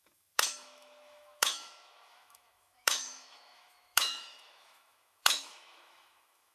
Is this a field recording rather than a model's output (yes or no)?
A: no